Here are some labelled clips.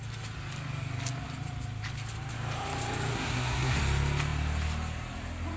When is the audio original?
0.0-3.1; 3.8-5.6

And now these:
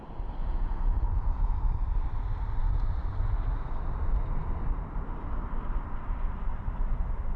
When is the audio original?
0.0-0.4; 1.5-7.4

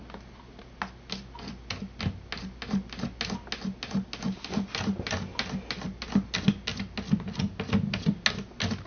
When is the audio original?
0.0-8.9

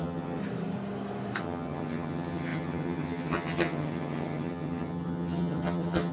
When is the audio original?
0.4-1.4

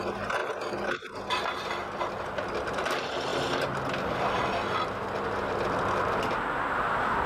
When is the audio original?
0.0-7.3

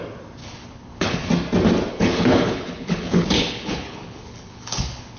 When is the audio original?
0.0-0.4; 1.3-1.9

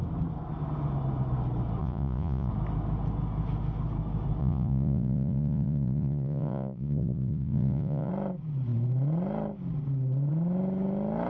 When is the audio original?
0.0-1.8; 2.5-4.4; 8.1-11.3

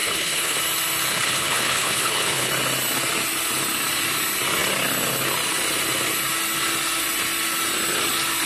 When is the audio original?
0.6-1.1; 2.5-8.5